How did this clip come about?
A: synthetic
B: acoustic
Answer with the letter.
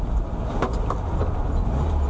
B